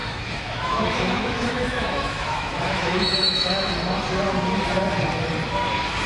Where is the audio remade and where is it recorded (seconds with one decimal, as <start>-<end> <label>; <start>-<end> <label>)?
0.0-3.7 remade; 3.7-6.1 recorded